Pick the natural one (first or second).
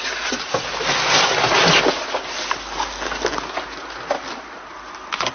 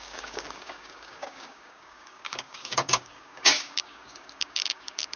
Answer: first